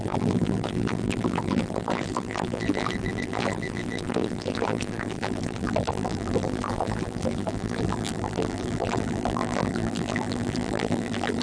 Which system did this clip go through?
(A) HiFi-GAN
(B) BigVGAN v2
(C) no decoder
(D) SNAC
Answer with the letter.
B